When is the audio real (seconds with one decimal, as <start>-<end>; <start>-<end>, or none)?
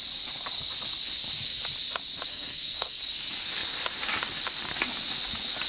0.0-2.3; 3.0-5.7